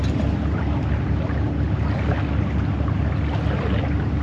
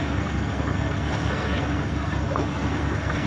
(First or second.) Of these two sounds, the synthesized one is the second